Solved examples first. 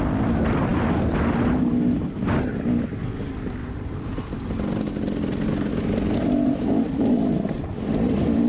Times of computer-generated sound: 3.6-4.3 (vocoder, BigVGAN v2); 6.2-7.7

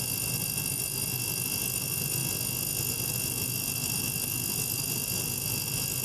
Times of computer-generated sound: 0.0-2.2 (vocoder, BigVGAN v2); 2.9-6.0

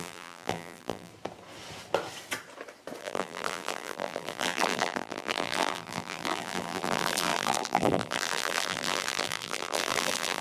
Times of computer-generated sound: 0.0-1.1 (vocoder, BigVGAN v2); 3.0-10.4

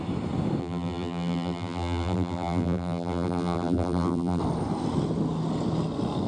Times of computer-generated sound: 0.6-4.4 (vocoder, BigVGAN v2)